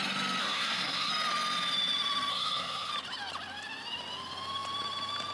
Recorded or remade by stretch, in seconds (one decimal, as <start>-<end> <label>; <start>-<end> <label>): 0.0-0.4 recorded; 0.4-1.1 remade; 1.1-2.3 recorded; 2.3-2.9 remade; 2.9-5.3 recorded